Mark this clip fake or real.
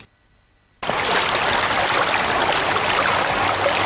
real